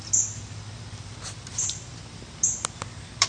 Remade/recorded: remade